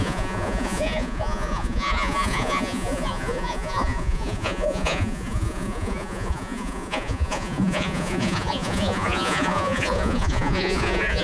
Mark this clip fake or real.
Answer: fake